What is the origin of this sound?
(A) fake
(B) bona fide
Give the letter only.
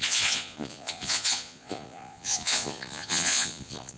A